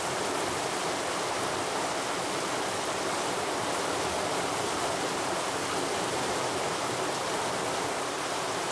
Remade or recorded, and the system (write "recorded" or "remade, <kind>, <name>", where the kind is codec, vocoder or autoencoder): recorded